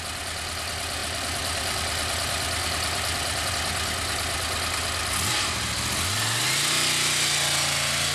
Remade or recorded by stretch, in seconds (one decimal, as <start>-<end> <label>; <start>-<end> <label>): 0.0-1.0 recorded; 1.0-3.5 remade; 3.5-8.1 recorded